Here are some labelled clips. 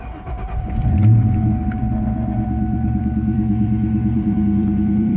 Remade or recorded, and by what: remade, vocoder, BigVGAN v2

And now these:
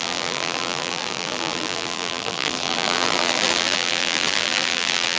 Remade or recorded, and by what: remade, vocoder, BigVGAN v2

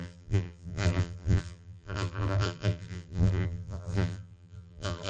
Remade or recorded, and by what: remade, vocoder, BigVGAN v2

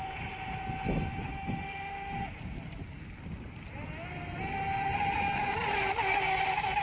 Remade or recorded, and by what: recorded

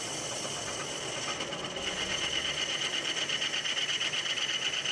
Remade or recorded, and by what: recorded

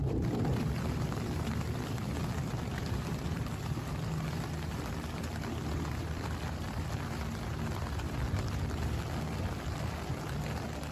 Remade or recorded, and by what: remade, vocoder, BigVGAN v2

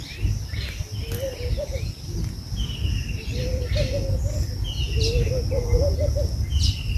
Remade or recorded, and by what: recorded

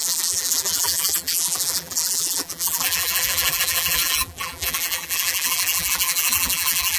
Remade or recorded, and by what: remade, vocoder, BigVGAN v2